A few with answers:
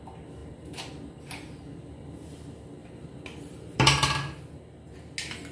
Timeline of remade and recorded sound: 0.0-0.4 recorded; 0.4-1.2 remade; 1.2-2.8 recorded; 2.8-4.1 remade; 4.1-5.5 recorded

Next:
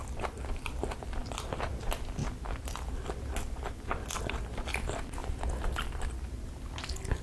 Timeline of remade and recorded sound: 0.0-5.2 recorded; 5.2-6.6 remade; 6.6-7.2 recorded

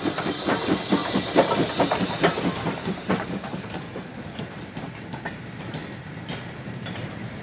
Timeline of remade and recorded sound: 0.0-5.8 remade; 5.8-6.6 recorded; 6.6-7.4 remade

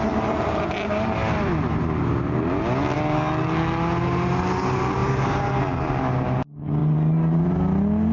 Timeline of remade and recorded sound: 0.0-5.0 recorded; 5.0-5.5 remade; 5.5-6.8 recorded; 6.8-7.4 remade; 7.4-8.1 recorded